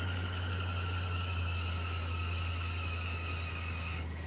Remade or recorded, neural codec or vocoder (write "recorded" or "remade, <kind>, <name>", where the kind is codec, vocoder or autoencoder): remade, codec, DAC